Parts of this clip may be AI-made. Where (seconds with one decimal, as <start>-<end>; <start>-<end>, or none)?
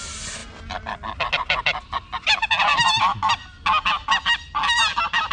none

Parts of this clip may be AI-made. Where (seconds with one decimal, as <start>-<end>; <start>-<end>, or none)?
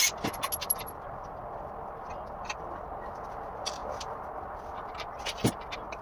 none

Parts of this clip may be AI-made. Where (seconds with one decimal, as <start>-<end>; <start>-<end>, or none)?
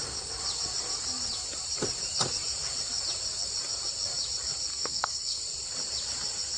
4.7-5.4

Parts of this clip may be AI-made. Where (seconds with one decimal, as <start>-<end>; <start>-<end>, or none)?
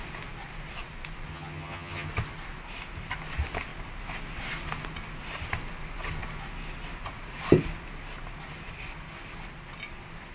1.3-2.1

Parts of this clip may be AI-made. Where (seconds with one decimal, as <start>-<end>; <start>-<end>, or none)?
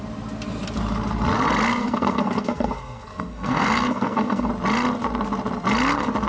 1.7-4.5